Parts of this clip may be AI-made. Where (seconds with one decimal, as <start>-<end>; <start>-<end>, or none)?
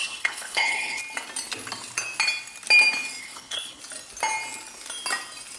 0.0-1.0; 3.2-3.8